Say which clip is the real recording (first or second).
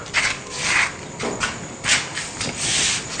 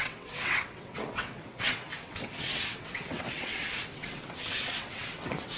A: first